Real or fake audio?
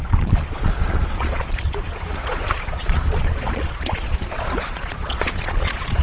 fake